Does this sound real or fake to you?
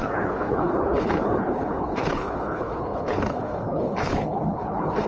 fake